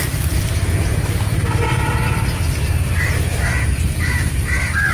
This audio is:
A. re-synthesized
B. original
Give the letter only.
B